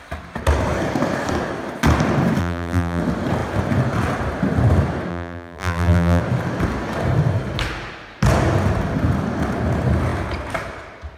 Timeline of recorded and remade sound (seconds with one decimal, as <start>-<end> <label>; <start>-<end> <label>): 0.0-2.4 recorded; 2.4-3.0 remade; 3.0-5.1 recorded; 5.1-6.2 remade; 6.2-11.2 recorded